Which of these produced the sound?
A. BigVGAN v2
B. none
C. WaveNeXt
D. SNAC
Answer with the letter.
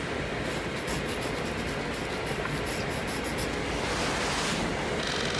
B